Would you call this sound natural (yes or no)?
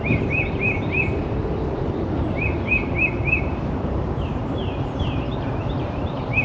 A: no